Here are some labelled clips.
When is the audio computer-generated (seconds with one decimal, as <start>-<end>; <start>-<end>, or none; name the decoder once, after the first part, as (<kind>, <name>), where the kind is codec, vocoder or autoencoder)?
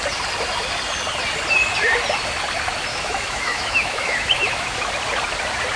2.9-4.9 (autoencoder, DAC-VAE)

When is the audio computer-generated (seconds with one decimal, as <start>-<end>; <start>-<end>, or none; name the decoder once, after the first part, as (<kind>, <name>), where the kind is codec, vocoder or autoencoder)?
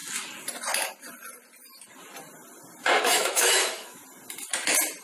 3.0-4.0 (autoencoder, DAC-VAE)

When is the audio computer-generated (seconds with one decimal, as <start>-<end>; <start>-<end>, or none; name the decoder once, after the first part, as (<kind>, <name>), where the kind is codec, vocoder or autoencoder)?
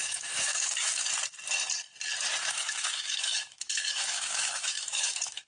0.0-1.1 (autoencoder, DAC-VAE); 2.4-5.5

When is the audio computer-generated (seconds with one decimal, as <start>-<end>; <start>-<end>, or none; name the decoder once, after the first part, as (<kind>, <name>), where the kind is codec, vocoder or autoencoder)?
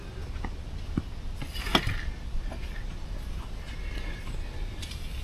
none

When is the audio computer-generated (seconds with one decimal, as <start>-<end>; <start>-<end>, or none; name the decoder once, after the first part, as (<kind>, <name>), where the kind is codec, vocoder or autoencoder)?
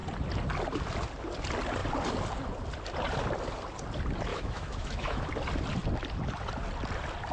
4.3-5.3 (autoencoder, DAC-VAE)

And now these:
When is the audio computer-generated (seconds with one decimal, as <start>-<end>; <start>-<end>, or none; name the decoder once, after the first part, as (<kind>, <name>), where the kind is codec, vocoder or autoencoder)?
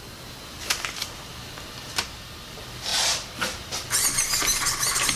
none